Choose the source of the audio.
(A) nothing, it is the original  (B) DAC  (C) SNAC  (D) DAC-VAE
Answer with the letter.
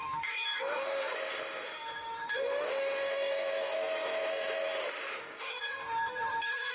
D